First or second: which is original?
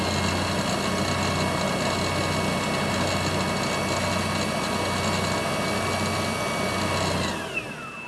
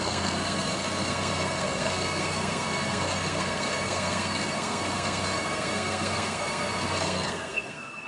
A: first